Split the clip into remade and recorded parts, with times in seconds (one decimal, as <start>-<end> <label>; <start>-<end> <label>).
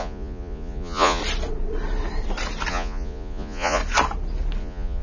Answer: 0.0-1.2 remade; 1.2-2.7 recorded; 2.7-3.8 remade; 3.8-4.6 recorded; 4.6-5.0 remade